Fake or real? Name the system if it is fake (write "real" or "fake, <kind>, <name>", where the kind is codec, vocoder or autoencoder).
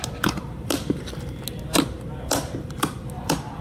real